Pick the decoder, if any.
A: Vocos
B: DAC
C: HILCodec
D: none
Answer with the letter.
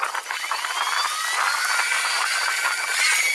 D